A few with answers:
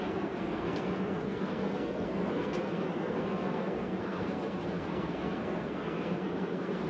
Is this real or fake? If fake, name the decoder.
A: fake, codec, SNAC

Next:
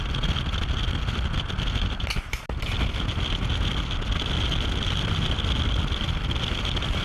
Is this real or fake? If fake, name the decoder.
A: real